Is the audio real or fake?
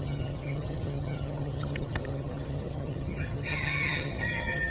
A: fake